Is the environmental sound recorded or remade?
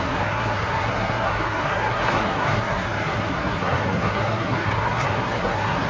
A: remade